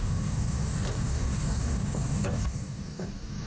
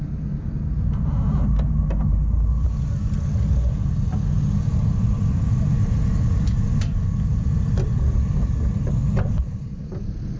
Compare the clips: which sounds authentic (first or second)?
second